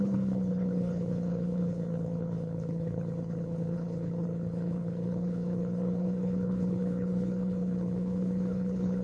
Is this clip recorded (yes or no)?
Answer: no